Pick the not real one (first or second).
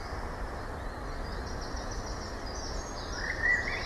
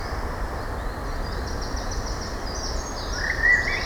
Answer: first